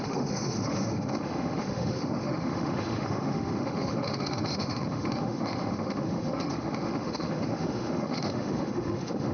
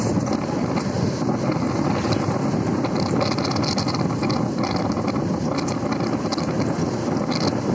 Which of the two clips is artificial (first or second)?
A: first